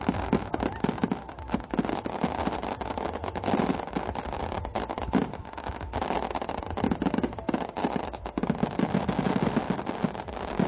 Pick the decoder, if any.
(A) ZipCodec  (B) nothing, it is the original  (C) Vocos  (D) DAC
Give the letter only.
B